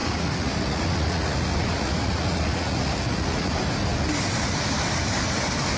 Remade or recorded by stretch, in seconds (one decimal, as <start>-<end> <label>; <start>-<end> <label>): 0.0-3.5 remade; 3.5-5.8 recorded